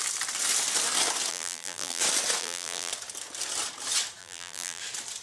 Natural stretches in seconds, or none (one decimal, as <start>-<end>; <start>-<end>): 0.0-1.3; 2.0-2.4; 2.9-4.2; 4.8-5.2